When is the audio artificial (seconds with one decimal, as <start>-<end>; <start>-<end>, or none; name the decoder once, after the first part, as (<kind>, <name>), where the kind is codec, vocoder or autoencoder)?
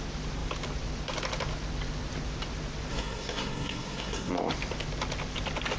2.9-4.3 (codec, SNAC)